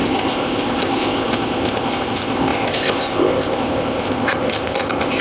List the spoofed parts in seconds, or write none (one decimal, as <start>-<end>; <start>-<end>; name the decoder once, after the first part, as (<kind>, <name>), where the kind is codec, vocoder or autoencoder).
0.0-5.2 (codec, ZipCodec)